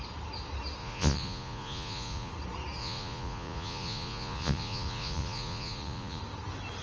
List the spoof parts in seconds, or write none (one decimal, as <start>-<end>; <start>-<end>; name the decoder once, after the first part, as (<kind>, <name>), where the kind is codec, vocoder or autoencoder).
0.8-2.3 (vocoder, Vocos); 2.8-6.2